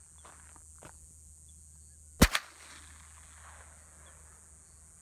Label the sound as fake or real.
real